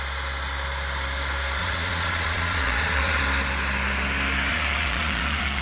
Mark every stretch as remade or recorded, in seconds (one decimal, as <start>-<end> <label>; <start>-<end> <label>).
0.0-1.6 recorded; 1.6-3.2 remade; 3.2-4.5 recorded; 4.5-5.6 remade